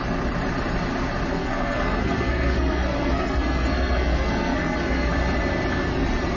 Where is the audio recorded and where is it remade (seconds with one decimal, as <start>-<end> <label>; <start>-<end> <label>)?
0.0-1.3 recorded; 1.3-5.1 remade; 5.1-6.4 recorded